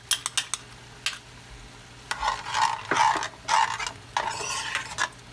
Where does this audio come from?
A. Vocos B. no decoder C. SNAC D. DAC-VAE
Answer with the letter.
B